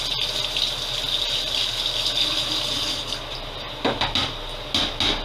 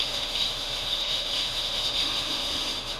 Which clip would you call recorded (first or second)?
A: first